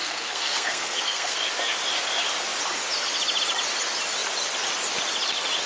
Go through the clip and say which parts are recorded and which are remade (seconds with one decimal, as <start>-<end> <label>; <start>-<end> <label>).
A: 0.0-1.5 remade; 1.5-5.7 recorded